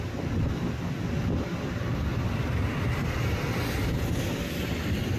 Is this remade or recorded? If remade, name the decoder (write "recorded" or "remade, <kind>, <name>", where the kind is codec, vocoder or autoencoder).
recorded